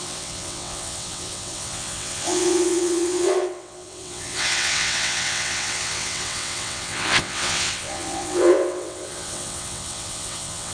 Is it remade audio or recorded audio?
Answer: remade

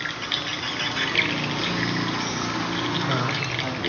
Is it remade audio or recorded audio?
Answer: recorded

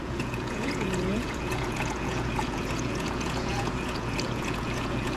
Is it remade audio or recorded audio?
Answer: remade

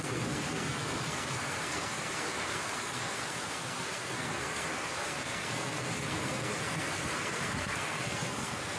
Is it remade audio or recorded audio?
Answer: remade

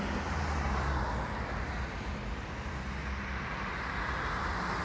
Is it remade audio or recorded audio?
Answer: recorded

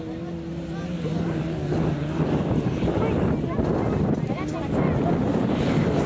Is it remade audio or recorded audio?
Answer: recorded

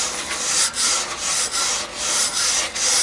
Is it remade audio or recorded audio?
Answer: recorded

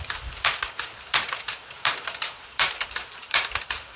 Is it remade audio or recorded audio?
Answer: remade